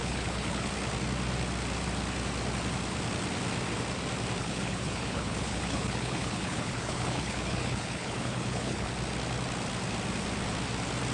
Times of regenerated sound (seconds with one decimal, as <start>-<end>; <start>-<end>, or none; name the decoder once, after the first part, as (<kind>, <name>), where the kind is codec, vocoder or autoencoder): 0.0-0.7 (codec, HILCodec); 4.4-8.9